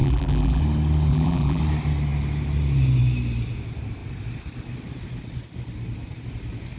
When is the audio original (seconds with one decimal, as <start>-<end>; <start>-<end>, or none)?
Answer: 0.6-1.1; 1.6-6.8